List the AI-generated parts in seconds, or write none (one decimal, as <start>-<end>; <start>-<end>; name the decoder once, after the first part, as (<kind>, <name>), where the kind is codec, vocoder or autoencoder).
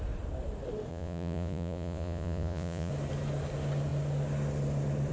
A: 0.9-2.9 (vocoder, Vocos)